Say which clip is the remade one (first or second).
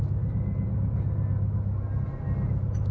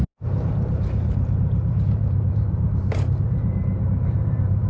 second